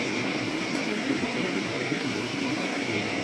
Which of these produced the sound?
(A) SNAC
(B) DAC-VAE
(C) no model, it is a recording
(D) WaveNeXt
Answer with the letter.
A